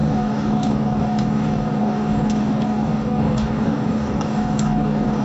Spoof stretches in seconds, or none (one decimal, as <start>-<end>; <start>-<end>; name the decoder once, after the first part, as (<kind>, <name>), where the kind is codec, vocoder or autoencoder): 0.0-5.2 (codec, DAC)